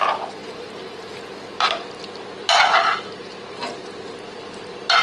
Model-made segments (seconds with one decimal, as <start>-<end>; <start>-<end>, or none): 0.4-1.1; 3.2-3.7